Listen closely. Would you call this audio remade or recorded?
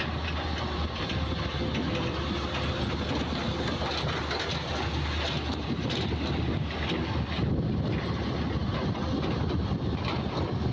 recorded